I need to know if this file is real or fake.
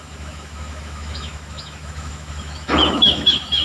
fake